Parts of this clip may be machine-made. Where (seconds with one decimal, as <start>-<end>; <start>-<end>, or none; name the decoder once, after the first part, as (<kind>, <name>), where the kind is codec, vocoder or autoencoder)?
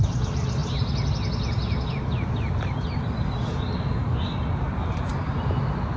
none